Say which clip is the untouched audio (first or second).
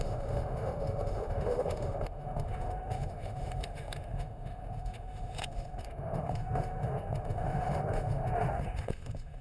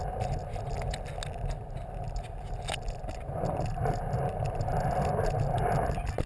second